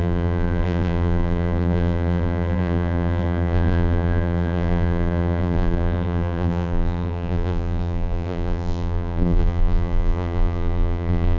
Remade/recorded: remade